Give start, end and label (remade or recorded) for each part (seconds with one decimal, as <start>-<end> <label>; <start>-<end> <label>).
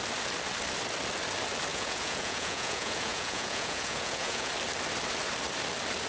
0.0-1.7 recorded; 1.7-4.5 remade; 4.5-6.1 recorded